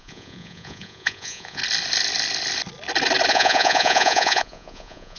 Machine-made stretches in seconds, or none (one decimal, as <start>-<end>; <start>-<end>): 0.0-1.6; 3.3-5.2